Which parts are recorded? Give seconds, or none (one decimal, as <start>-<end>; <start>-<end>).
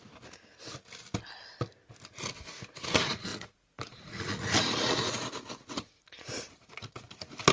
0.0-3.3; 7.1-7.5